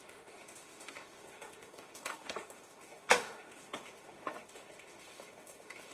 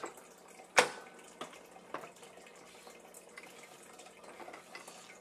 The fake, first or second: first